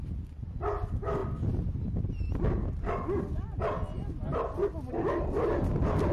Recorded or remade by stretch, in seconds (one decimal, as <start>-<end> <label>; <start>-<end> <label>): 0.0-6.1 recorded